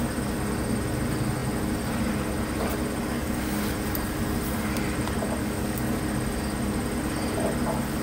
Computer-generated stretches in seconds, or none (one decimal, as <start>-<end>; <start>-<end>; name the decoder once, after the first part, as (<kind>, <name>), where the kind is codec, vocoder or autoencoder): 3.0-3.6 (codec, DAC); 5.4-6.0

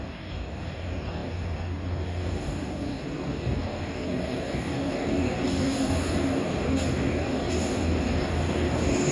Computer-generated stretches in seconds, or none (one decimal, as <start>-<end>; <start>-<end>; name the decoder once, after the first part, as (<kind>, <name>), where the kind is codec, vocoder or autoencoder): 0.0-9.1 (codec, DAC)

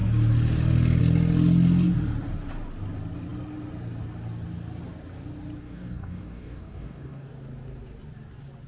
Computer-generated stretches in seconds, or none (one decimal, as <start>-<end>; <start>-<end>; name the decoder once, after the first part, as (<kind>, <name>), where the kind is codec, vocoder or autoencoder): 5.6-7.3 (codec, DAC)